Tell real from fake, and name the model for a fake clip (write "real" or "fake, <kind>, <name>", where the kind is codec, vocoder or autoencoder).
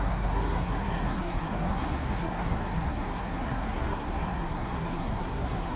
fake, codec, SNAC